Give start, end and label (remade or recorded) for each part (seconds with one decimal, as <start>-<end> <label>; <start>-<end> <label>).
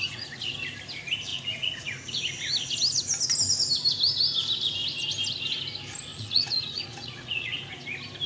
0.0-0.5 remade; 0.5-1.3 recorded; 1.3-2.2 remade; 2.2-6.1 recorded; 6.1-7.6 remade; 7.6-8.3 recorded